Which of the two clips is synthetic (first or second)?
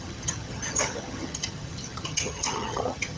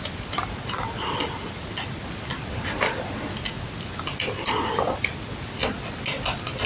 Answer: first